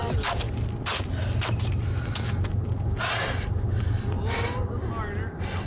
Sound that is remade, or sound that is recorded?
recorded